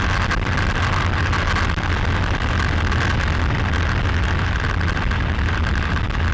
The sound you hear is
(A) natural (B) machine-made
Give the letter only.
A